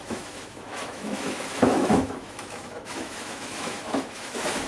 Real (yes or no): no